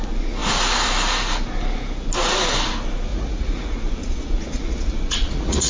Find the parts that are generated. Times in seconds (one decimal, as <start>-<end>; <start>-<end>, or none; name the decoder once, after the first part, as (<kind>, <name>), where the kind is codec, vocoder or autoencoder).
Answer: 3.1-5.7 (vocoder, Vocos)